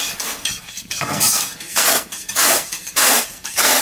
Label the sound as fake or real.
fake